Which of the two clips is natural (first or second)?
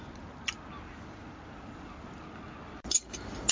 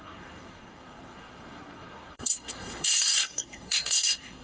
first